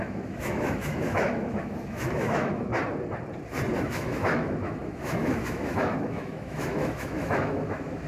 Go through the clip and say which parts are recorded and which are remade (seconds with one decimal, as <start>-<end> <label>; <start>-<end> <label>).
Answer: 0.0-2.7 remade; 2.7-3.8 recorded; 3.8-8.1 remade